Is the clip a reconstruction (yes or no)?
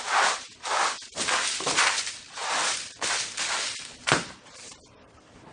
yes